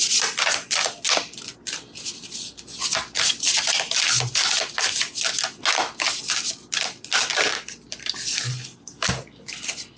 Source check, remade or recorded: recorded